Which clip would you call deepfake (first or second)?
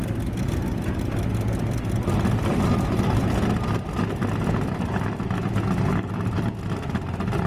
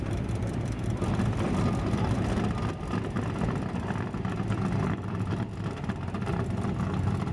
second